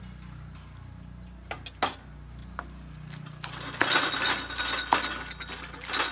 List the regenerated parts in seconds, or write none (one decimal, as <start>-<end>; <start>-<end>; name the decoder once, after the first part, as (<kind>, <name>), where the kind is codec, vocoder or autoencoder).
none